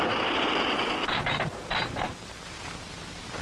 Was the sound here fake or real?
real